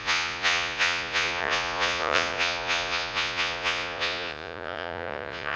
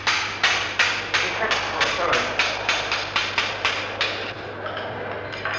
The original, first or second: second